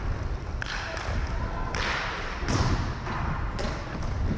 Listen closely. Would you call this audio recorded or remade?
recorded